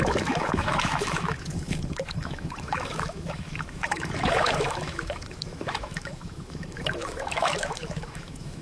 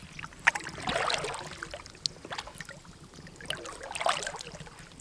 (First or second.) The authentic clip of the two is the second